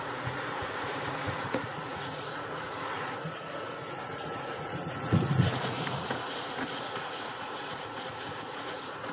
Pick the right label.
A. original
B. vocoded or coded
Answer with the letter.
B